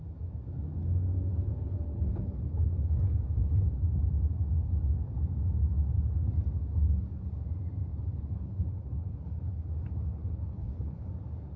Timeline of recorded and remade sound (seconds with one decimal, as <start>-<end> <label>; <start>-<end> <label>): 0.0-1.5 recorded; 1.5-2.7 remade; 2.7-7.9 recorded; 7.9-9.7 remade; 9.7-10.1 recorded; 10.1-11.1 remade; 11.1-11.6 recorded